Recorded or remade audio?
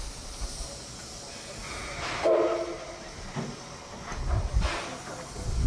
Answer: recorded